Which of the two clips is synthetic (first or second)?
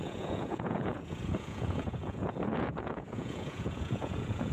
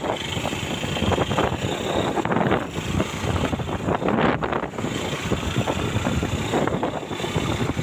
first